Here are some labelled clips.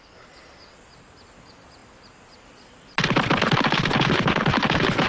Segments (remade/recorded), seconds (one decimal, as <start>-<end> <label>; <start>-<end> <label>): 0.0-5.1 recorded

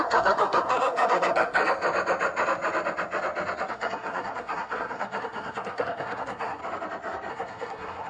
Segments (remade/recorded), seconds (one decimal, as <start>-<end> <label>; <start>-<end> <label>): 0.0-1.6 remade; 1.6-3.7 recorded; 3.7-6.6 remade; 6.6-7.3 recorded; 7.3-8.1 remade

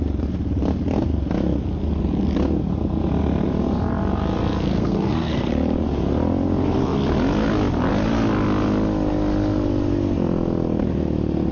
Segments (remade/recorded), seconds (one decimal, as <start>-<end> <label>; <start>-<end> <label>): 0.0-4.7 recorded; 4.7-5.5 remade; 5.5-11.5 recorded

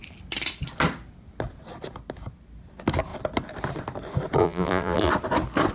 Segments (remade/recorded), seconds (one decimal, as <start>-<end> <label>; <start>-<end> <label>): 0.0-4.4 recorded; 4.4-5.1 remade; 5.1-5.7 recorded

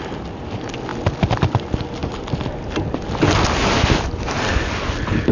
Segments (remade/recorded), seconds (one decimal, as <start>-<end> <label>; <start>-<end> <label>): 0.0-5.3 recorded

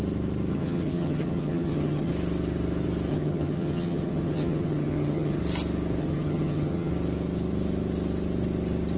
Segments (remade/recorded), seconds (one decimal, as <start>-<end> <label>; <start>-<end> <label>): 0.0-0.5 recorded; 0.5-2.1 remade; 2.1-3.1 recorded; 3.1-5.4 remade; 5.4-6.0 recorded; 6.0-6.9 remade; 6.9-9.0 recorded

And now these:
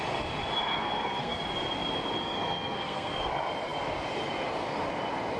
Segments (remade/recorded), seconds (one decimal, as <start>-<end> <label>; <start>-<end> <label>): 0.0-0.7 recorded; 0.7-1.4 remade; 1.4-2.2 recorded; 2.2-3.3 remade; 3.3-5.4 recorded

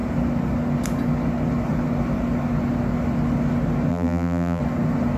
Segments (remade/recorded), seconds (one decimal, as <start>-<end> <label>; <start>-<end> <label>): 0.0-3.9 recorded; 3.9-4.6 remade; 4.6-5.2 recorded